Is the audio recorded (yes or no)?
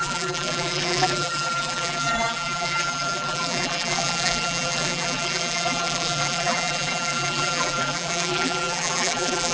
no